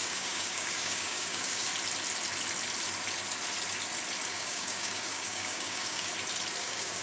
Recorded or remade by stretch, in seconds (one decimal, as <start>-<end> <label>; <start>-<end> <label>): 0.0-1.7 remade; 1.7-4.3 recorded; 4.3-6.1 remade; 6.1-6.6 recorded; 6.6-7.0 remade